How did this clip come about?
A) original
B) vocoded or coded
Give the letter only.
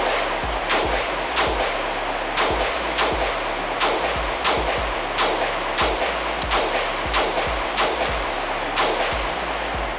A